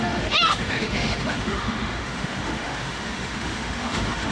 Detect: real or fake fake